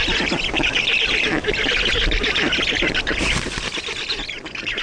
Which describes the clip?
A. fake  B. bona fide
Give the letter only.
B